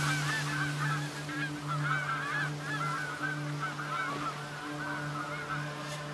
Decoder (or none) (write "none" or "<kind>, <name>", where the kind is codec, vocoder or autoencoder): none